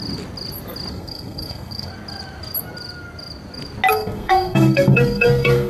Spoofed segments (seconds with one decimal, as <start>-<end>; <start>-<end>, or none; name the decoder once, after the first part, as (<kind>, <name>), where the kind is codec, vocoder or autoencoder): 0.9-1.9 (codec, SNAC); 3.9-5.7